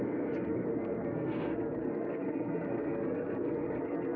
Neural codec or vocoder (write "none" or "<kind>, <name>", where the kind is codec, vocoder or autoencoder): codec, SNAC